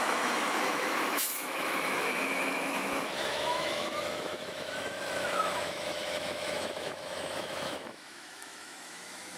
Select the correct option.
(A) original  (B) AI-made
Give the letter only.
B